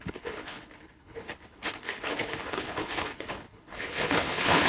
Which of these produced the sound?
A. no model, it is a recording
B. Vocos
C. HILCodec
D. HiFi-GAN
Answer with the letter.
C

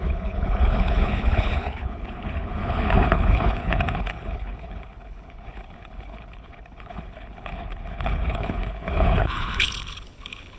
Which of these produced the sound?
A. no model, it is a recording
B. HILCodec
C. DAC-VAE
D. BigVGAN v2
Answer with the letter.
B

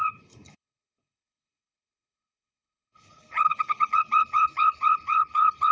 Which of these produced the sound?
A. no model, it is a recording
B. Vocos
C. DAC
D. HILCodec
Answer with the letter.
D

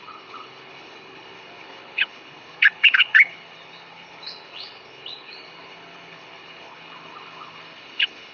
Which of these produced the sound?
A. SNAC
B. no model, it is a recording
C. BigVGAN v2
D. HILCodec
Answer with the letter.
D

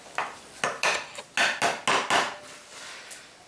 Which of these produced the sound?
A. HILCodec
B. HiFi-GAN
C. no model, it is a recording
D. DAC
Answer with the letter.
C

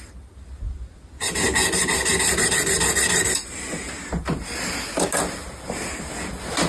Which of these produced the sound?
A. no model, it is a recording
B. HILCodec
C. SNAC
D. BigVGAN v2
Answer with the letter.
A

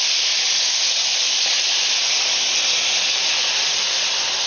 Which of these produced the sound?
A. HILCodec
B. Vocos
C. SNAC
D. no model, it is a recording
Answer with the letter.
D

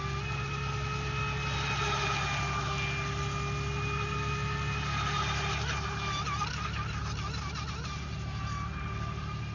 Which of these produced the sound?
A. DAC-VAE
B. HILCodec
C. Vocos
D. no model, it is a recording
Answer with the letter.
D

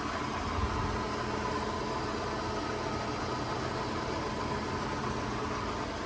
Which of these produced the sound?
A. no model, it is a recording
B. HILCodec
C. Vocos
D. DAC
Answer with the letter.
A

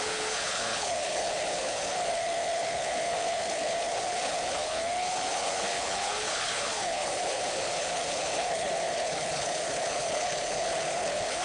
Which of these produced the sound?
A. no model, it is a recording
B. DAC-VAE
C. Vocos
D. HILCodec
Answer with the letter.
D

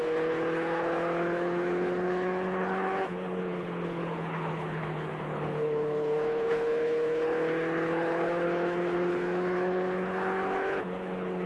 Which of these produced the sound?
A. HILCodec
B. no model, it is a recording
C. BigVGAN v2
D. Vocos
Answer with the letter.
A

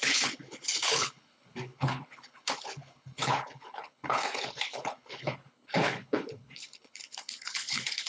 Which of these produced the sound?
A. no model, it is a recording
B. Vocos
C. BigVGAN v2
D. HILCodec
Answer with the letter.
D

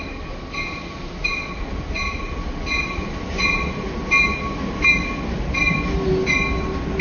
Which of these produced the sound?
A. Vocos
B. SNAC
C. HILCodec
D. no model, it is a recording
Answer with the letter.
D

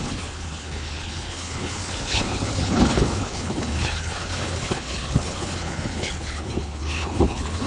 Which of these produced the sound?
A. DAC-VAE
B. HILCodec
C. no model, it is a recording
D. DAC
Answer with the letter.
B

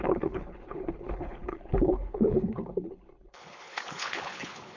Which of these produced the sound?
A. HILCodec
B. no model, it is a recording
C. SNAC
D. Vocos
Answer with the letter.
A